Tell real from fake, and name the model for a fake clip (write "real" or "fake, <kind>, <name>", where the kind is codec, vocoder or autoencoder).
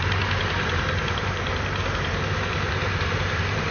fake, vocoder, BigVGAN v2